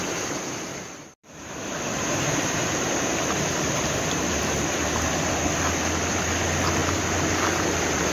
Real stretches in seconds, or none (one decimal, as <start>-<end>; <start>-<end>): 0.0-0.7; 5.3-8.1